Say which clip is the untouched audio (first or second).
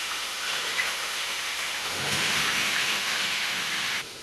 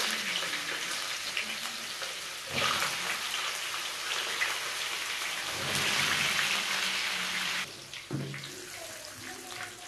second